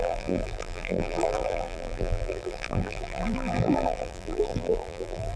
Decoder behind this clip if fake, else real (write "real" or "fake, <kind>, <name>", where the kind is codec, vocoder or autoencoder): fake, vocoder, BigVGAN v2